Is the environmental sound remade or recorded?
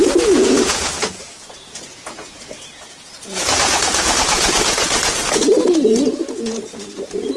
remade